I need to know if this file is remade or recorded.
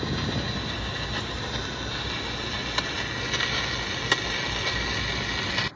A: recorded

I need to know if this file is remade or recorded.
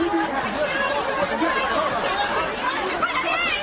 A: recorded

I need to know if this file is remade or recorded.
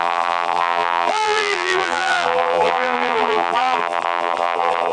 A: remade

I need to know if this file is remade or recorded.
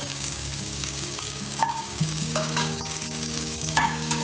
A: remade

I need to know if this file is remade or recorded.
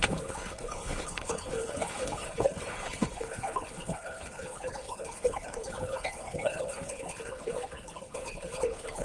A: remade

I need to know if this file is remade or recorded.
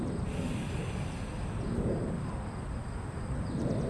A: recorded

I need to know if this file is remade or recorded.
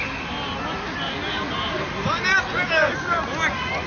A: recorded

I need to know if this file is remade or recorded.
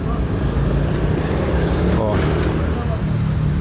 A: recorded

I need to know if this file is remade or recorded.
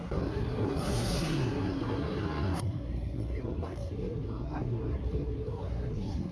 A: remade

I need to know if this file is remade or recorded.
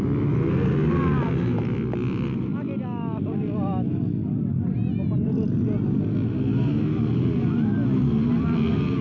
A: recorded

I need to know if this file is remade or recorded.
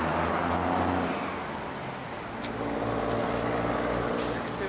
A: recorded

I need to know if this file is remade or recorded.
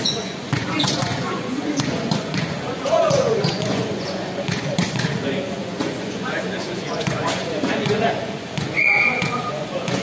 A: remade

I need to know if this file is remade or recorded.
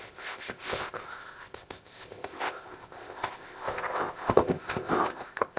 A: remade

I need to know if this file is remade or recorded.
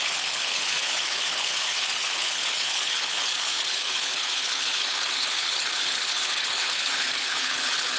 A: remade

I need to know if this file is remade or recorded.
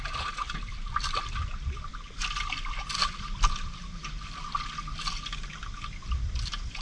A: recorded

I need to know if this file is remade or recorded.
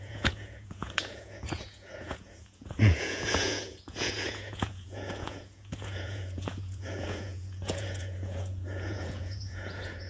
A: remade